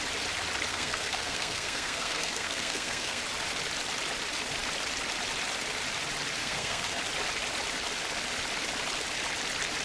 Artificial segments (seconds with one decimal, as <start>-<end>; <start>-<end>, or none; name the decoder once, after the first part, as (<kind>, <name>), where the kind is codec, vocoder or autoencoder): 0.7-3.2 (codec, SNAC); 6.4-7.0